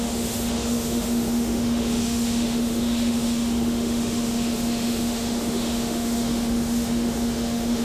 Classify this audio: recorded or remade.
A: remade